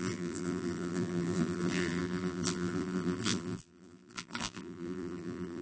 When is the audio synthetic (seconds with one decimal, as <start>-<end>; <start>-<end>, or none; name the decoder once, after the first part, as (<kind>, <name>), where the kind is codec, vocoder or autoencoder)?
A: 0.0-5.6 (vocoder, BigVGAN v2)